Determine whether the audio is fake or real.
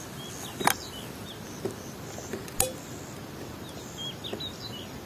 real